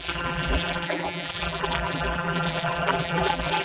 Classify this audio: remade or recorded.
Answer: remade